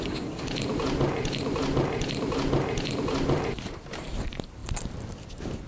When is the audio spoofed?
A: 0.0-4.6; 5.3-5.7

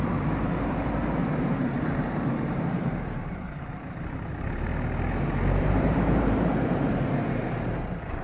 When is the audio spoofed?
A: 0.0-4.7; 5.6-8.2

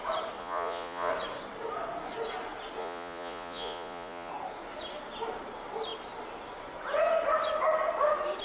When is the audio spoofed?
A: 0.4-1.1; 2.8-4.3

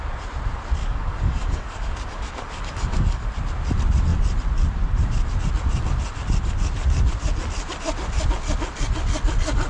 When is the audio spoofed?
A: 0.8-3.3

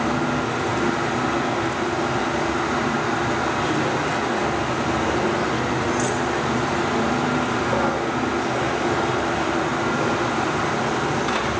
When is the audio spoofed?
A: none

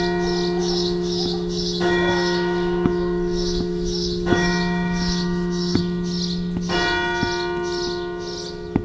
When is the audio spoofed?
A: 0.6-5.8

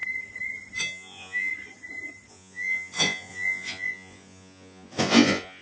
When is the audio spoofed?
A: 0.8-1.5; 2.3-5.6